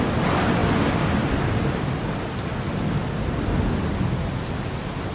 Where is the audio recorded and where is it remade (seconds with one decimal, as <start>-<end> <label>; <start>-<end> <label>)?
0.0-5.1 recorded